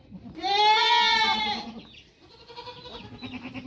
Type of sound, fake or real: real